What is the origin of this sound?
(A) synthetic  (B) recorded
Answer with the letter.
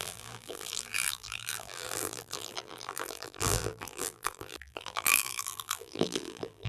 A